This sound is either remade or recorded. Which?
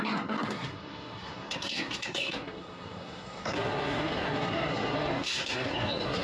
remade